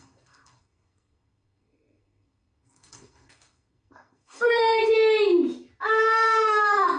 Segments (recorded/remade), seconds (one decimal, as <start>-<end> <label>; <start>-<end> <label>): 0.0-4.8 remade; 4.8-5.8 recorded; 5.8-7.0 remade